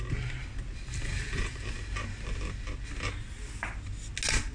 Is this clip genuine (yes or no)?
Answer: yes